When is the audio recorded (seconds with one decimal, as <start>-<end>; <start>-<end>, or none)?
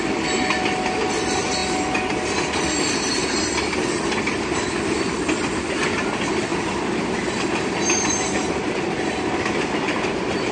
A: 0.0-6.5; 7.7-10.5